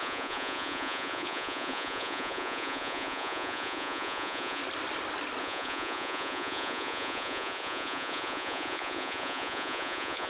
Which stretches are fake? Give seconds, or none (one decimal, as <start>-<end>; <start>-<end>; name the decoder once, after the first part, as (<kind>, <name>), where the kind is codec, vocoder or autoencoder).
0.0-4.6 (vocoder, Vocos); 5.4-10.3